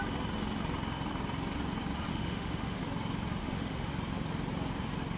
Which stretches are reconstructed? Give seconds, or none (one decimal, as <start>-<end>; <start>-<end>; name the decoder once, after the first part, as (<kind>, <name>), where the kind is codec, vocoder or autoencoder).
2.1-2.8 (autoencoder, DAC-VAE); 3.4-3.9